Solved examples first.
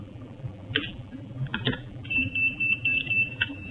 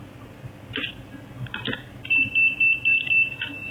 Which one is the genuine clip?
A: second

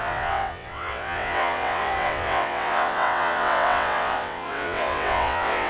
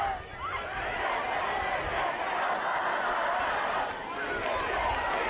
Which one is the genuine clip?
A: second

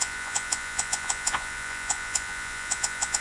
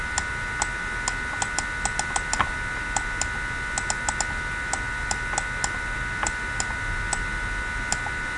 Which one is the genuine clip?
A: second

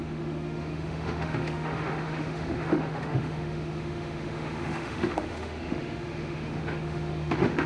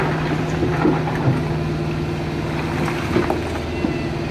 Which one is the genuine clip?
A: second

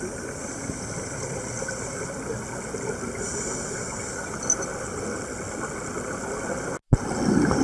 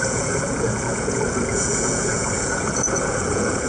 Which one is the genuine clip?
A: first